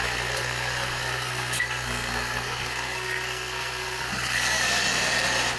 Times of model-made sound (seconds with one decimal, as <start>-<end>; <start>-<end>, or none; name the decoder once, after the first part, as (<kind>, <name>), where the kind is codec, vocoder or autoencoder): 0.0-4.8 (codec, SNAC)